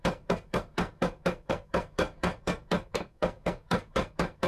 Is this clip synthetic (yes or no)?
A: yes